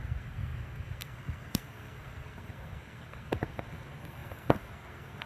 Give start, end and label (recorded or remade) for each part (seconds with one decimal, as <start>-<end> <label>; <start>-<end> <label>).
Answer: 0.0-5.3 remade